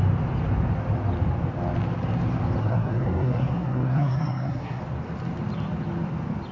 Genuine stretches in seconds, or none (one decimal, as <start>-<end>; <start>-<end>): 0.0-2.6; 4.8-6.5